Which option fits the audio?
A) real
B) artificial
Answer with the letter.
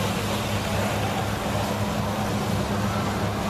A